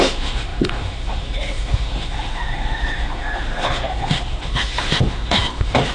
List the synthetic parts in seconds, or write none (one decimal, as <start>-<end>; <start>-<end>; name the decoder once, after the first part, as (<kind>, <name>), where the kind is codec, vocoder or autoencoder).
0.0-5.9 (autoencoder, DAC-VAE)